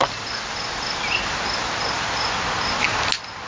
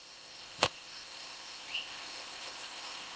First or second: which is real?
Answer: first